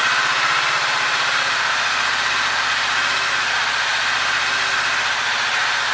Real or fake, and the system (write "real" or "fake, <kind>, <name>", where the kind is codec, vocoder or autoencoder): real